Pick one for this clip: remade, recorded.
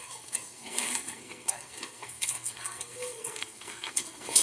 remade